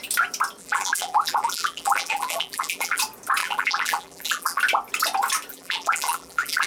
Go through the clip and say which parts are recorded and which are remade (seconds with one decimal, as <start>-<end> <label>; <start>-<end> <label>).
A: 0.0-0.6 recorded; 0.6-3.0 remade; 3.0-3.4 recorded; 3.4-4.6 remade; 4.6-5.5 recorded; 5.5-6.7 remade